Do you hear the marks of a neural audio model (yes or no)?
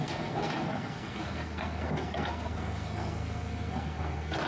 yes